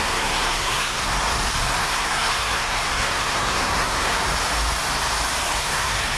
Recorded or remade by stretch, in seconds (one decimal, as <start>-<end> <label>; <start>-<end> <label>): 0.0-1.0 remade; 1.0-1.8 recorded; 1.8-4.1 remade; 4.1-5.6 recorded; 5.6-6.2 remade